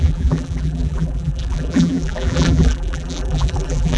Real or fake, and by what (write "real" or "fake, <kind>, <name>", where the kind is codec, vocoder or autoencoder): fake, vocoder, BigVGAN v2